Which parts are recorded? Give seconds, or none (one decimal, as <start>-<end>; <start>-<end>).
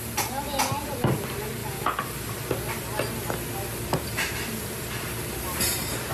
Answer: 0.0-6.1